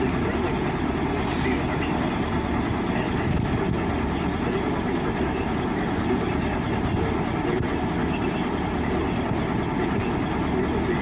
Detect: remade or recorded recorded